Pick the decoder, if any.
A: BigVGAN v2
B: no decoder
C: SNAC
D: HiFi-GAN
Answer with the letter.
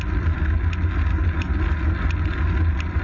B